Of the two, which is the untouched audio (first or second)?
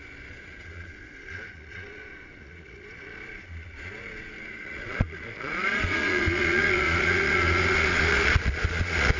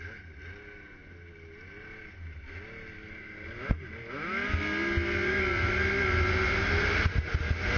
second